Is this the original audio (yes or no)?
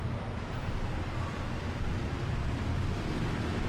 yes